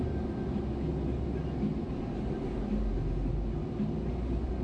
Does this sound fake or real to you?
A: real